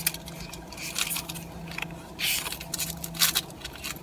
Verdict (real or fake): real